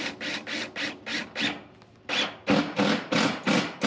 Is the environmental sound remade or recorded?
recorded